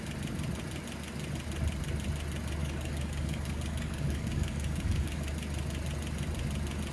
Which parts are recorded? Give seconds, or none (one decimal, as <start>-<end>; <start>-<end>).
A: 0.0-2.6; 5.3-6.9